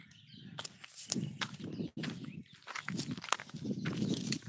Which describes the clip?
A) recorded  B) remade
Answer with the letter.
A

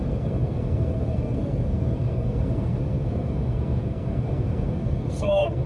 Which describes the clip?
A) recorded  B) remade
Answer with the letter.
B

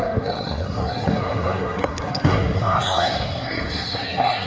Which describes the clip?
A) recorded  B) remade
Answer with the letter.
B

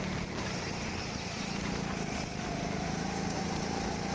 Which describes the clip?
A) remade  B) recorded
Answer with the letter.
B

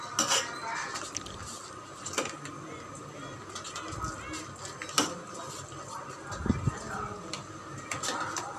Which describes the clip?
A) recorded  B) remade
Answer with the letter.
A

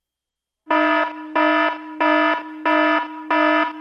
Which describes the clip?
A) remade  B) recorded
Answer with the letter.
B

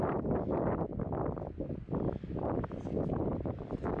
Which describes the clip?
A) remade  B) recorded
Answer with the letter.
B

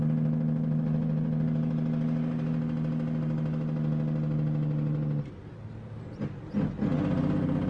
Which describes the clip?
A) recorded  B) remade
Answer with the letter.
A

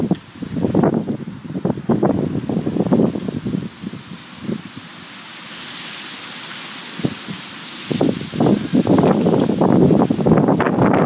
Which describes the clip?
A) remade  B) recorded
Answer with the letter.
B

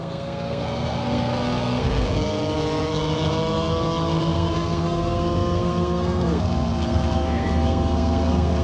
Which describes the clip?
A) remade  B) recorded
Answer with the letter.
A